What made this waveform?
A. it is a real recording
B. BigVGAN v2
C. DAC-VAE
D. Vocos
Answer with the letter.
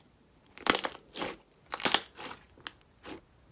A